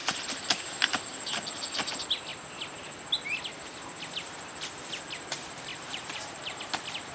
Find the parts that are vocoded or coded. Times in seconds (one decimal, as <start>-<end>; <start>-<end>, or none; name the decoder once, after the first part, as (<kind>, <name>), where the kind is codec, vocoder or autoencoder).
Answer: 0.0-1.0 (vocoder, BigVGAN v2); 5.7-6.6

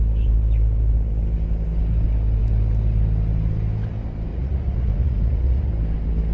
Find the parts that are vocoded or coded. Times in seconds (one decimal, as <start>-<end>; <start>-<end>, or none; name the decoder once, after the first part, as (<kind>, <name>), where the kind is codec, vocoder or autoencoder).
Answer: 4.3-5.7 (vocoder, Vocos)

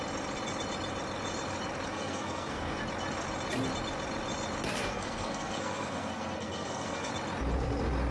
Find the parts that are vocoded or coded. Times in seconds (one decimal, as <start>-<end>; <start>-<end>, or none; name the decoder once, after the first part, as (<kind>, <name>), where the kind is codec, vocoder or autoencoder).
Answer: 1.9-2.8 (codec, SNAC); 4.7-7.1

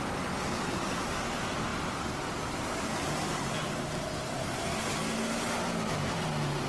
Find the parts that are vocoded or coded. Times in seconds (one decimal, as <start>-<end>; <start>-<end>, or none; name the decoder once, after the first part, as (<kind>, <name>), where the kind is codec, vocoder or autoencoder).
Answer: none

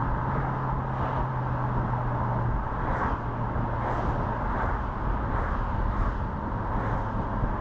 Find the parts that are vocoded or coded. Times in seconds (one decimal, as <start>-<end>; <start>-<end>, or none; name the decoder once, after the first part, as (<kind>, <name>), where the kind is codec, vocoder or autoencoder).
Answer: none

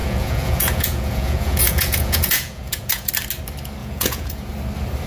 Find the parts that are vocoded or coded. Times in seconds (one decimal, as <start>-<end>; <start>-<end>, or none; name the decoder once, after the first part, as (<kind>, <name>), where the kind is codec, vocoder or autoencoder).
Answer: 0.0-3.1 (vocoder, Vocos); 3.8-4.5